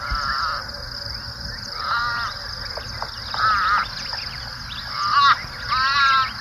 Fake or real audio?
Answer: real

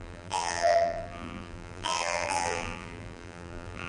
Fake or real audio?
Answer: fake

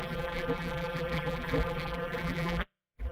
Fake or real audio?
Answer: fake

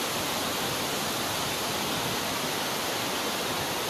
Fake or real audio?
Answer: real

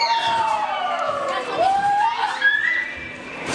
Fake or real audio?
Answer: fake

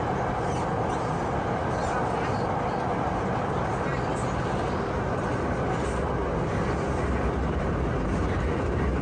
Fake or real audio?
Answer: real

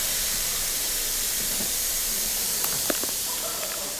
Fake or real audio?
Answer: fake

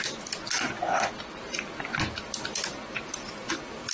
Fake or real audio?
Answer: fake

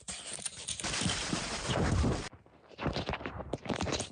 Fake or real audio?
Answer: fake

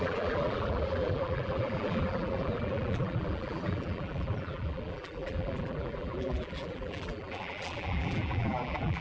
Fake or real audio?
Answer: fake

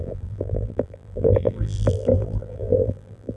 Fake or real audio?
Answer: fake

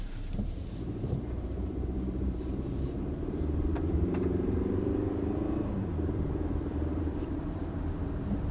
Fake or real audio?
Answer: fake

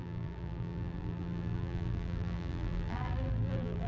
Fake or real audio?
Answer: fake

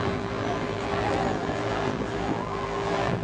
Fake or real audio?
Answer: fake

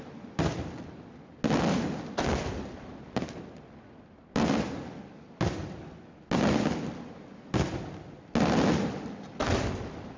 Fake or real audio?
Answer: real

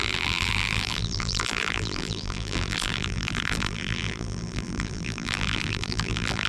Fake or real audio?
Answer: fake